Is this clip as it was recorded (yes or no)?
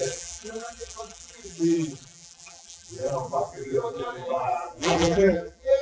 no